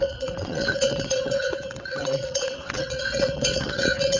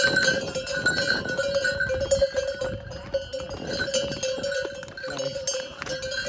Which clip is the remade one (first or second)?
first